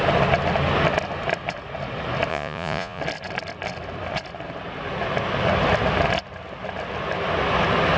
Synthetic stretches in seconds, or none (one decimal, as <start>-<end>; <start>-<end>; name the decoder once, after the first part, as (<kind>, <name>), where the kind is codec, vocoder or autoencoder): 2.3-3.0 (vocoder, Vocos)

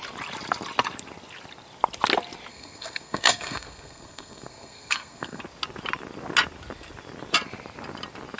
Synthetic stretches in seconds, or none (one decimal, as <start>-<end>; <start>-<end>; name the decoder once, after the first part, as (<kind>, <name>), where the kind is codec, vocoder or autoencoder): 2.5-5.4 (codec, SNAC)

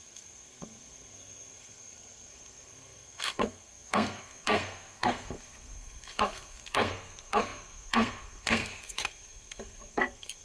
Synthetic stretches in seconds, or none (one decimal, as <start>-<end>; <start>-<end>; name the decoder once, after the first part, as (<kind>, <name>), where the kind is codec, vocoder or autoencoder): 0.0-10.4 (codec, SNAC)

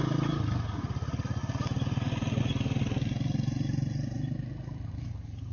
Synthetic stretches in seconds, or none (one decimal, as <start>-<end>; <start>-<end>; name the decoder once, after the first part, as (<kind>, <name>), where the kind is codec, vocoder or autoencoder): none